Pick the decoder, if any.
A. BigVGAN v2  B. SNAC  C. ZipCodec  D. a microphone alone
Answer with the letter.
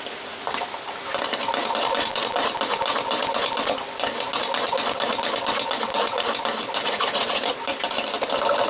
D